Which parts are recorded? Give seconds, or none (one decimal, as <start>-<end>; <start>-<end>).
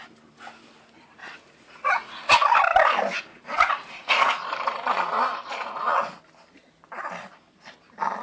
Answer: 0.0-1.2; 2.2-3.3; 6.2-8.2